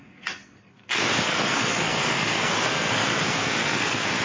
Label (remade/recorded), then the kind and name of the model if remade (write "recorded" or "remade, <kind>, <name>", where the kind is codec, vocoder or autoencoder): remade, codec, SNAC